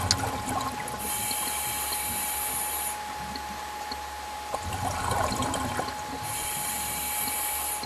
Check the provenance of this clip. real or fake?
real